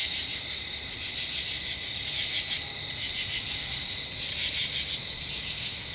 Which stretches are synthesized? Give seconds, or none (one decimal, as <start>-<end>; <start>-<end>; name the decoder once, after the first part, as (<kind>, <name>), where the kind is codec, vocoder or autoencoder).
none